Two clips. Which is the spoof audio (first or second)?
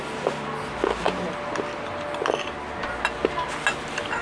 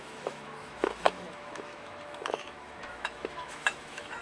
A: second